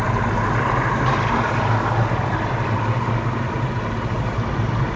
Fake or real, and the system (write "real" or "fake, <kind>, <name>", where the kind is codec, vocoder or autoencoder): real